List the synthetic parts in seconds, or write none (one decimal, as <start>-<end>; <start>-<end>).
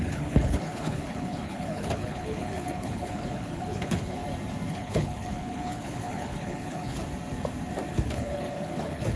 0.0-4.2; 4.7-7.0; 7.9-9.2